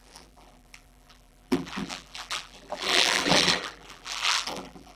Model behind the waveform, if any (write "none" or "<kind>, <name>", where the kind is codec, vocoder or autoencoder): vocoder, BigVGAN v2